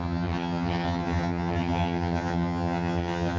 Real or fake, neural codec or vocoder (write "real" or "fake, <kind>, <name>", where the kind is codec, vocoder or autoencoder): fake, vocoder, HiFi-GAN